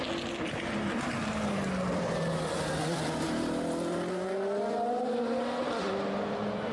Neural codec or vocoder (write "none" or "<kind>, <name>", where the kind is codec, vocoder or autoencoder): none